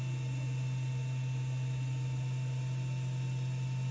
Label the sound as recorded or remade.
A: recorded